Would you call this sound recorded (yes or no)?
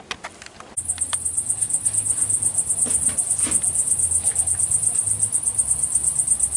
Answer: yes